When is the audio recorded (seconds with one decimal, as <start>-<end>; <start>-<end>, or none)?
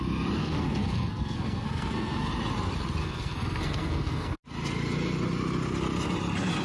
0.0-0.4; 2.3-3.0; 4.4-6.6